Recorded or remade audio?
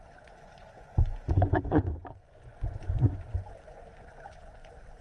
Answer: remade